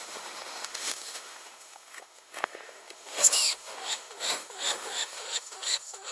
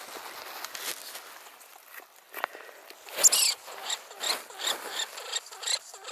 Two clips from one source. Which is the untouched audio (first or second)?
second